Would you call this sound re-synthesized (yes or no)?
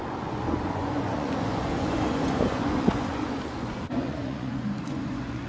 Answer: yes